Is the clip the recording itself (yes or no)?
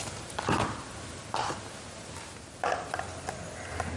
yes